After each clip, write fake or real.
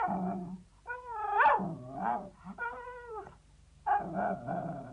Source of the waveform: fake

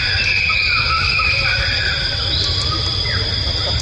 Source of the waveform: fake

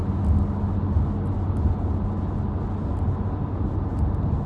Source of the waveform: real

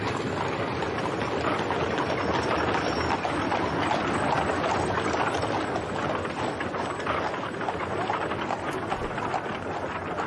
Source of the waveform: real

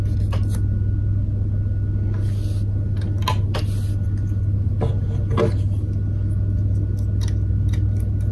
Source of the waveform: real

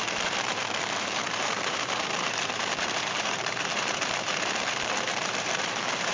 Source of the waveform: fake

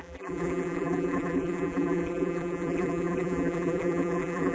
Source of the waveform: fake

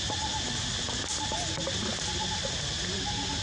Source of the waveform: real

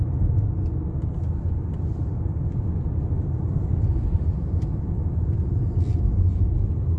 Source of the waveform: real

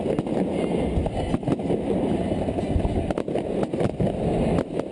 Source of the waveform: real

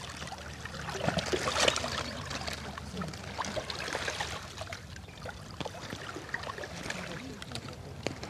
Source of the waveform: real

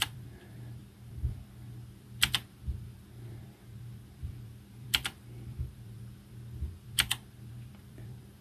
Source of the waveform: fake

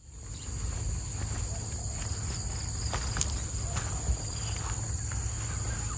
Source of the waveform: real